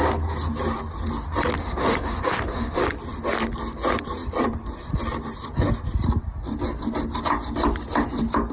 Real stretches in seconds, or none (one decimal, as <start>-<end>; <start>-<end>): 0.0-1.6; 2.8-8.5